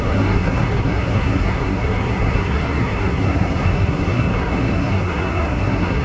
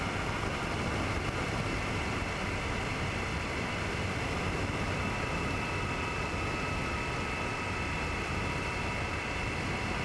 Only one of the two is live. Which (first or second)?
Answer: second